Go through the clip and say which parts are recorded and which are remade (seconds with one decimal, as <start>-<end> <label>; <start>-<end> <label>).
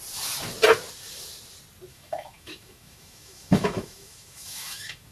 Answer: 0.0-1.9 recorded; 1.9-5.1 remade